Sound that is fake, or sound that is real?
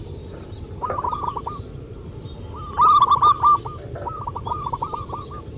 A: real